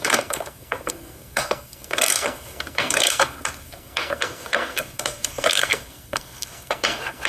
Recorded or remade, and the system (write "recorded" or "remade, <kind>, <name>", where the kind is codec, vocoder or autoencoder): remade, codec, SNAC